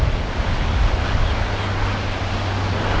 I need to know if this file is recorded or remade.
recorded